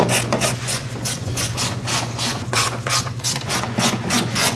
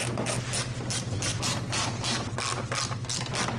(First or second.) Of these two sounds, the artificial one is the first